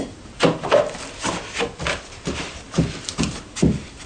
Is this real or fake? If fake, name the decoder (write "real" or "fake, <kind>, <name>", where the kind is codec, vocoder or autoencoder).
real